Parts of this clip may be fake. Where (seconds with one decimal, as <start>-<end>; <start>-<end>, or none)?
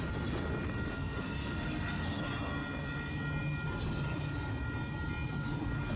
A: 0.9-2.2